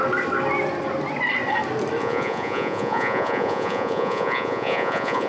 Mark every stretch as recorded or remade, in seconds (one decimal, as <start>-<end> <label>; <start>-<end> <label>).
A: 0.0-2.0 recorded; 2.0-5.3 remade